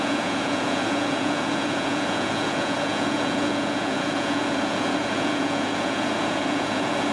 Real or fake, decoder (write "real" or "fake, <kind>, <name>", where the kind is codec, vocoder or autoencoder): fake, vocoder, Vocos